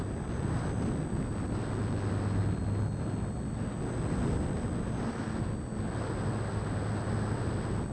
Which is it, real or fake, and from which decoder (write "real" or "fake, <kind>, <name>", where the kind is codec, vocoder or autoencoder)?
real